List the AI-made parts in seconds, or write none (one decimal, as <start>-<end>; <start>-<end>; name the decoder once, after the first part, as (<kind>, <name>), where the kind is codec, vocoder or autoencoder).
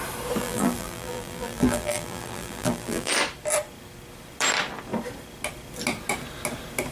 0.4-3.1 (vocoder, BigVGAN v2)